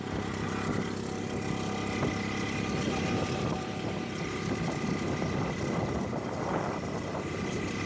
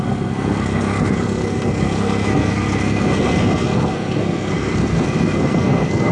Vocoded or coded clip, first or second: second